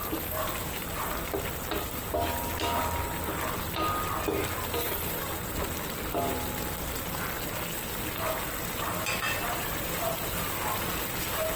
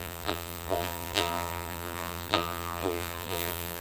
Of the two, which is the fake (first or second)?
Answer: second